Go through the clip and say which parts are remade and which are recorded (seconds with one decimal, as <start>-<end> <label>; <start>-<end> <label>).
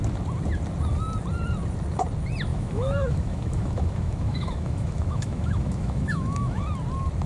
0.0-2.5 recorded; 2.5-6.6 remade; 6.6-7.3 recorded